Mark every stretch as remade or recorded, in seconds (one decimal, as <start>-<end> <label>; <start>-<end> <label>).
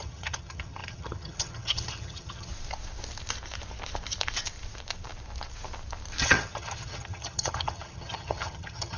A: 0.0-2.5 remade; 2.5-6.2 recorded; 6.2-9.0 remade